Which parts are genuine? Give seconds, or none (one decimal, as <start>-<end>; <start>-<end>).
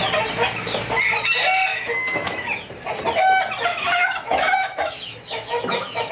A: 0.0-1.7; 2.5-3.7